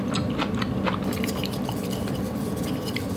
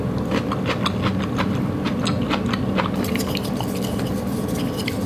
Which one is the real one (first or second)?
second